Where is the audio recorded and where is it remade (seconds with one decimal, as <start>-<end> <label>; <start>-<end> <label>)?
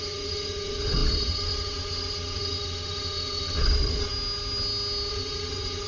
0.0-4.1 remade; 4.1-5.1 recorded; 5.1-5.9 remade